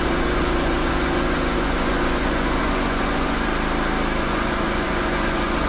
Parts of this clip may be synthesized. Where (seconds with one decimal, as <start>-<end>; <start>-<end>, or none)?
0.0-3.5; 4.2-5.7